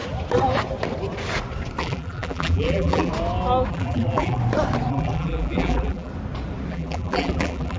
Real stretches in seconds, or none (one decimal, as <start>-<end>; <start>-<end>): 0.0-1.8; 3.1-3.7; 4.4-4.9; 6.1-6.7